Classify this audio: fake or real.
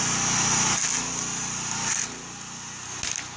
real